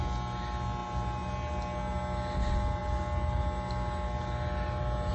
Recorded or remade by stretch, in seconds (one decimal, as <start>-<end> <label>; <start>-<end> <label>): 0.0-5.1 recorded